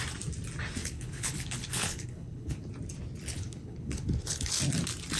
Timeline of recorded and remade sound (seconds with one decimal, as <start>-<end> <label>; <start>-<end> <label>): 0.0-0.8 recorded; 0.8-2.7 remade; 2.7-3.3 recorded; 3.3-4.6 remade; 4.6-5.2 recorded